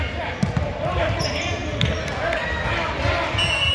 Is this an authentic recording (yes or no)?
yes